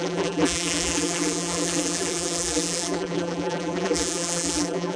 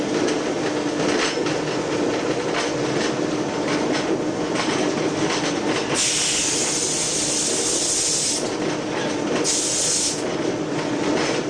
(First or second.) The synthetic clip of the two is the first